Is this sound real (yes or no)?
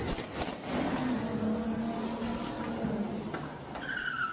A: yes